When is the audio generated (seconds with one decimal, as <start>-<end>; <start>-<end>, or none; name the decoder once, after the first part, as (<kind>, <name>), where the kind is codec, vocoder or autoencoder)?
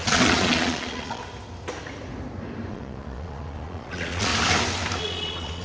0.0-1.2 (vocoder, Vocos); 2.7-4.3; 5.0-5.6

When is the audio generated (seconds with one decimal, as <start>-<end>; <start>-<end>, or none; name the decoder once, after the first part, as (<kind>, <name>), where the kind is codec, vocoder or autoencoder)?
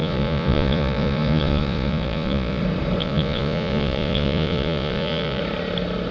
0.0-2.6 (vocoder, Vocos); 3.0-5.4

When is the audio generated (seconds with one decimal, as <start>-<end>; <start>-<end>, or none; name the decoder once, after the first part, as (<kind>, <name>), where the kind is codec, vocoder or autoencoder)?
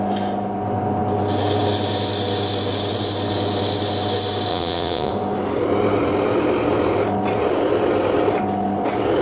4.5-5.1 (vocoder, Vocos)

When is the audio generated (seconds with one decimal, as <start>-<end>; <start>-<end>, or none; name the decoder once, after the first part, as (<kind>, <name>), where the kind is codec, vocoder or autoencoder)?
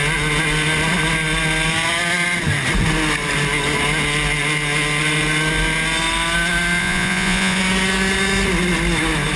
6.8-7.6 (vocoder, Vocos)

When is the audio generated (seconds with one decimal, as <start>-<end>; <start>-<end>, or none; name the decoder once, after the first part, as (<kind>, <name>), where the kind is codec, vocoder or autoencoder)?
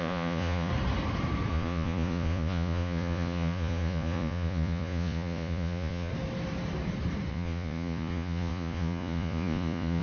0.0-0.7 (vocoder, Vocos); 1.5-6.1; 7.3-10.0